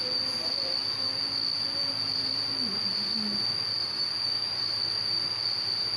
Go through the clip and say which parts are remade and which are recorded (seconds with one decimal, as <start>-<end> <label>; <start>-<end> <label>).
0.0-3.8 recorded; 3.8-4.6 remade; 4.6-6.0 recorded